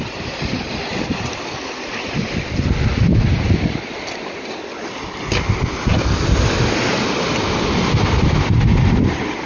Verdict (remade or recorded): recorded